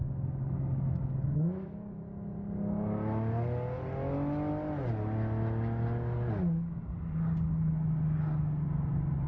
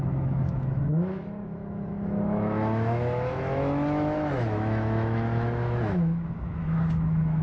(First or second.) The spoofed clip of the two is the second